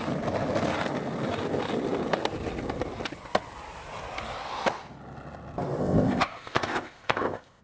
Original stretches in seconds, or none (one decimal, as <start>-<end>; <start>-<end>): 0.0-5.8